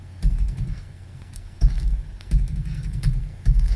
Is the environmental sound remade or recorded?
remade